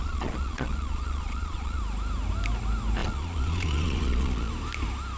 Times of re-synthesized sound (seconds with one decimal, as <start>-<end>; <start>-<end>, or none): 0.0-1.8; 3.0-4.5